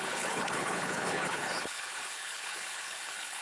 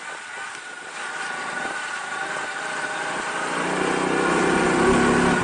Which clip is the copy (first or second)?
first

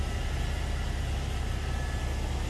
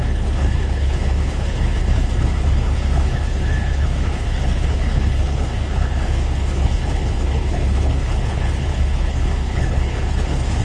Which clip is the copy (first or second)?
second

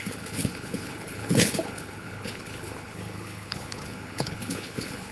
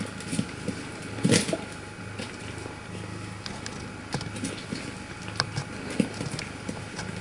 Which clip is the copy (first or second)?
first